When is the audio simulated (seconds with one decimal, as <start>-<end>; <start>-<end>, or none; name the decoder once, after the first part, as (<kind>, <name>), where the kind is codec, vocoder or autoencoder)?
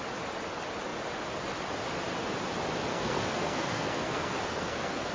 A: 2.9-5.1 (codec, SNAC)